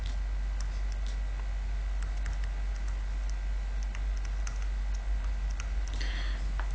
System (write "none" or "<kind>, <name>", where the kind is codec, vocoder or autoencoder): none